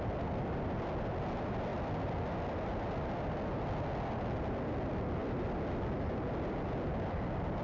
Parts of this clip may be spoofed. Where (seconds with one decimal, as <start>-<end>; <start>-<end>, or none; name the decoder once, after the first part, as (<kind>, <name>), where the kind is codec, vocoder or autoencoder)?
none